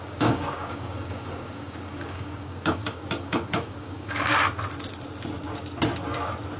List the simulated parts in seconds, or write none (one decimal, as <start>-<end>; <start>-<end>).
0.0-4.3